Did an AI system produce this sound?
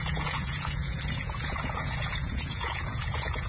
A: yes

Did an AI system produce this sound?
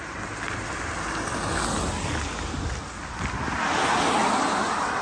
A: no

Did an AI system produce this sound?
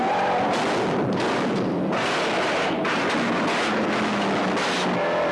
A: no